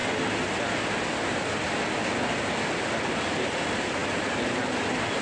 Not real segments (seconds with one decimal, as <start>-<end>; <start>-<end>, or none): none